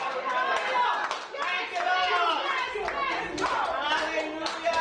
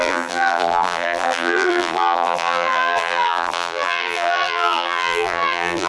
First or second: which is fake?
second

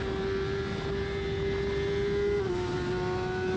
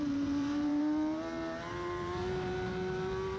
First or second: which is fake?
second